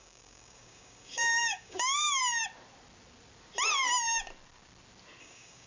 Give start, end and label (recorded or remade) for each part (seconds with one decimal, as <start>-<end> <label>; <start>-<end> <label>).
0.0-2.2 remade; 2.2-5.2 recorded; 5.2-5.7 remade